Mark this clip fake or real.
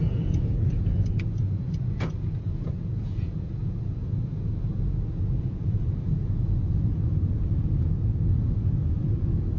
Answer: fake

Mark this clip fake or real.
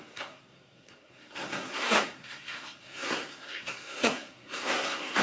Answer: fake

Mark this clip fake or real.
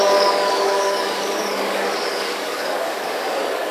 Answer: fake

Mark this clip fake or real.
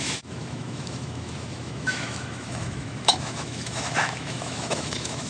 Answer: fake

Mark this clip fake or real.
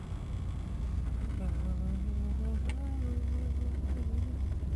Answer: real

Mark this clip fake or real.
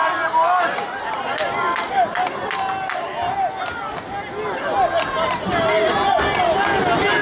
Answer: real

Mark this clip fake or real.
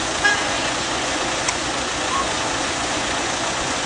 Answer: fake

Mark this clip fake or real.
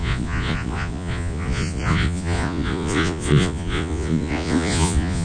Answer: fake